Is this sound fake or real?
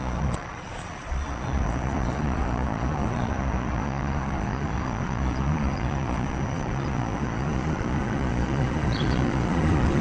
fake